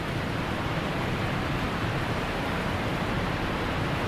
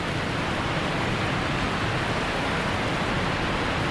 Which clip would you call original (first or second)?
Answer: second